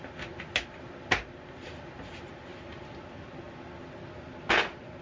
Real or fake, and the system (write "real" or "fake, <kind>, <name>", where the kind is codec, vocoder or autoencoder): real